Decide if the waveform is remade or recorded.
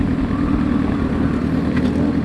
recorded